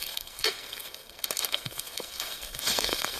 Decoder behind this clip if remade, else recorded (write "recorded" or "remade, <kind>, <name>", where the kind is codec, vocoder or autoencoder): remade, codec, SNAC